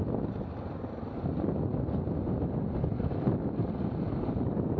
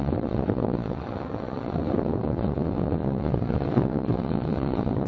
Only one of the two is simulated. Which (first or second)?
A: second